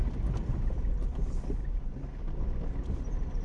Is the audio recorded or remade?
recorded